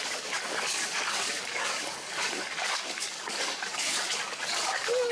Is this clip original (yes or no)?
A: no